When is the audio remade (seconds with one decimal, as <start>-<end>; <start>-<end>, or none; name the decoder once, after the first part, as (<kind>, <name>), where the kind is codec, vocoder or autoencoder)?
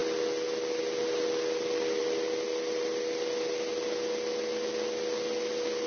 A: none